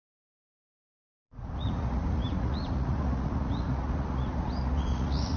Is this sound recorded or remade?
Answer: remade